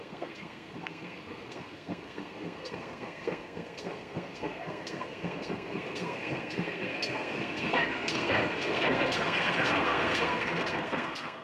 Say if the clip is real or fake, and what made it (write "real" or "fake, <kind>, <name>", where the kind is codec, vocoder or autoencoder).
fake, codec, SNAC